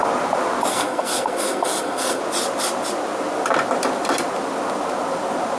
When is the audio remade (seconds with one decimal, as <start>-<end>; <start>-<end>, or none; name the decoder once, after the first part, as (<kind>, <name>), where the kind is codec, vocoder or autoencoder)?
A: 0.7-2.2 (codec, SNAC)